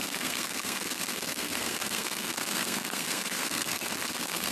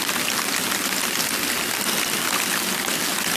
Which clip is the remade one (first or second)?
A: first